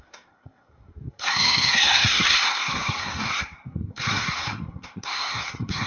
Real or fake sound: fake